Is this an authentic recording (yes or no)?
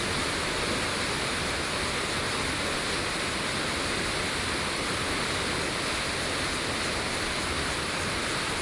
yes